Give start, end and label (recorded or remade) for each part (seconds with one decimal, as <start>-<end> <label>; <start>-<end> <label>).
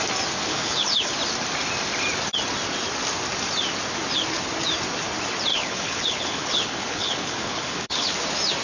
0.0-0.5 recorded; 0.5-1.1 remade; 1.1-5.5 recorded; 5.5-8.1 remade; 8.1-8.6 recorded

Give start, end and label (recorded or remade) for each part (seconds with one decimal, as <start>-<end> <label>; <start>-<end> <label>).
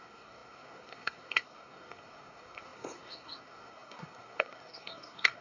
0.0-5.4 remade